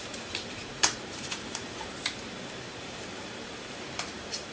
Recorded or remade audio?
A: remade